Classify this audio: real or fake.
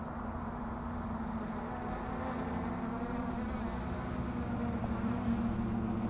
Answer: real